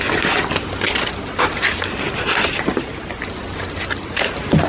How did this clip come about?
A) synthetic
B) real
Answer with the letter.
B